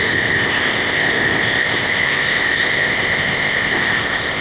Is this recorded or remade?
remade